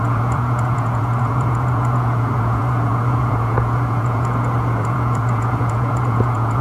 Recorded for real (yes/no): no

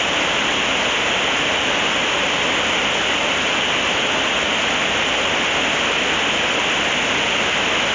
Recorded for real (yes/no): yes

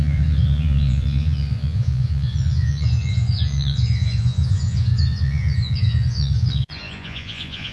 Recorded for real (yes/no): no